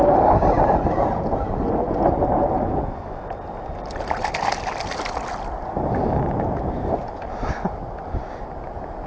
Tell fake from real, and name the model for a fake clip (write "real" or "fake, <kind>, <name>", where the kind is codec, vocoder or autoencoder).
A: real